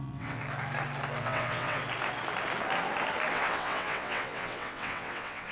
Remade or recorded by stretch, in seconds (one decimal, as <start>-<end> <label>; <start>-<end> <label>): 0.0-0.4 remade; 0.4-1.2 recorded; 1.2-1.8 remade; 1.8-3.3 recorded; 3.3-5.5 remade